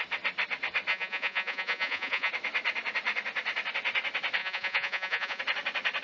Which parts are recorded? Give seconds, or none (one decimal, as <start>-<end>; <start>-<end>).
0.0-0.9; 2.3-4.4; 5.4-6.0